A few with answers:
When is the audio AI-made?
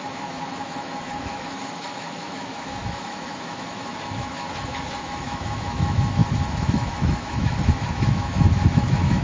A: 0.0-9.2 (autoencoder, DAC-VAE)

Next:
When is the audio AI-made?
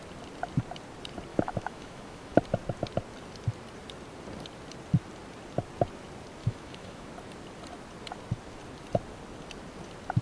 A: 1.3-2.4 (autoencoder, DAC-VAE); 6.4-7.1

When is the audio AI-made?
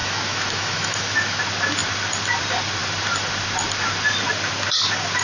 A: 0.0-1.4 (autoencoder, DAC-VAE)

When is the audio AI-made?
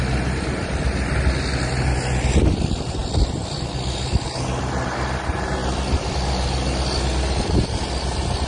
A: none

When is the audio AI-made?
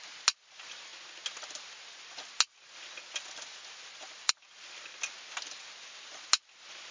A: none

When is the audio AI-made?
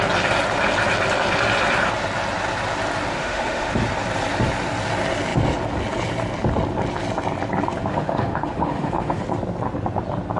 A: 3.1-3.7 (autoencoder, DAC-VAE); 7.9-9.2